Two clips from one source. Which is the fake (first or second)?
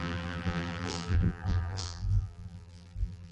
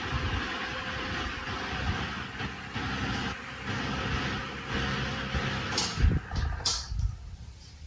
first